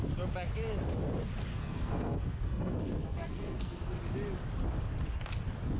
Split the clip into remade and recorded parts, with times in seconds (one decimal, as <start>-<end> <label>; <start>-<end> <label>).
0.0-1.5 recorded; 1.5-4.0 remade; 4.0-5.8 recorded

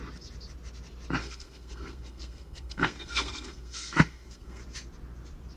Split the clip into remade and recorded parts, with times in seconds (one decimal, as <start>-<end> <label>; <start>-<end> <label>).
0.0-1.2 recorded; 1.2-4.6 remade; 4.6-5.6 recorded

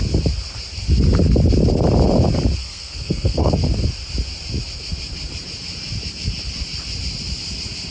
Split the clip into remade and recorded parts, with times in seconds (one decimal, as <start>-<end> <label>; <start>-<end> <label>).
0.0-2.6 recorded; 2.6-3.5 remade; 3.5-7.9 recorded